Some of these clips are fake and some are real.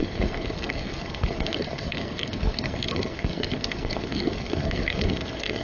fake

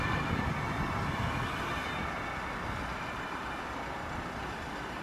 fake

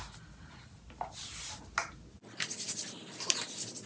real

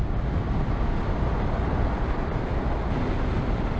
real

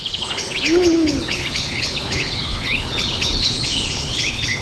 fake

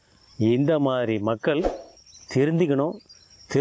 fake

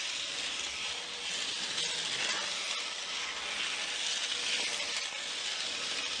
real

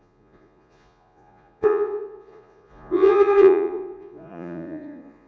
fake